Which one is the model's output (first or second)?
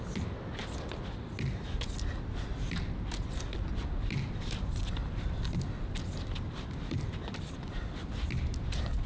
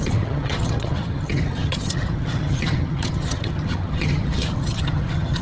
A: second